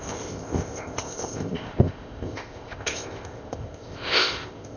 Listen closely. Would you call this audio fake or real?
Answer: fake